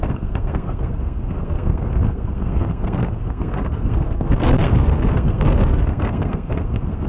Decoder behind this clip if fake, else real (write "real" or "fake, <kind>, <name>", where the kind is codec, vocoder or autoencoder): fake, codec, SNAC